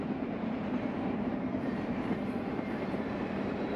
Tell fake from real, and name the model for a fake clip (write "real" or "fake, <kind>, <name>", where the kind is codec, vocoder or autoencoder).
fake, vocoder, BigVGAN v2